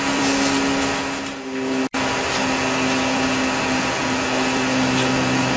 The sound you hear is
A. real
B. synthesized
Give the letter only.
A